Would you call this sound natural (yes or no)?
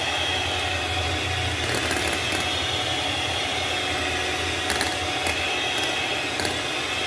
yes